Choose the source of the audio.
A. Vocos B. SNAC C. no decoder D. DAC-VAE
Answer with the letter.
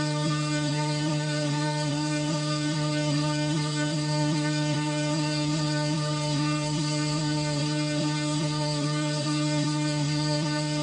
B